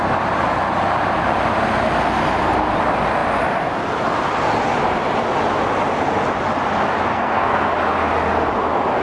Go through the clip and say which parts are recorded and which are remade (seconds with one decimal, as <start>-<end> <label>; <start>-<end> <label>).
0.0-7.1 recorded; 7.1-7.7 remade; 7.7-9.0 recorded